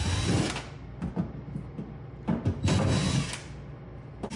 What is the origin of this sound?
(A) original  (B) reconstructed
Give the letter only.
A